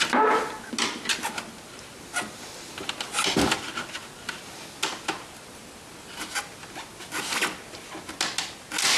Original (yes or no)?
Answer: yes